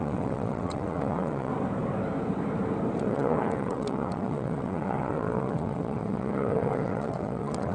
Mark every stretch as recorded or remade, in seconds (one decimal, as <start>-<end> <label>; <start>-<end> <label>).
0.0-1.5 remade; 1.5-3.0 recorded; 3.0-7.7 remade